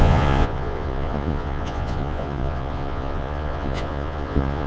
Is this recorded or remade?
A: remade